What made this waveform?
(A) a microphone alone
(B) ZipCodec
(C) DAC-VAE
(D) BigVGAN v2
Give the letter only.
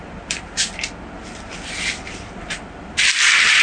A